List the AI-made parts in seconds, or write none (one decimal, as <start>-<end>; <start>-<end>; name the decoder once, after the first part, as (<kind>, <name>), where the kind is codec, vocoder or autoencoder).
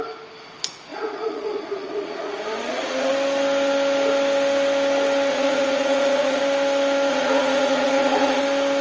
0.9-3.1 (vocoder, Vocos); 5.3-6.4; 7.1-8.4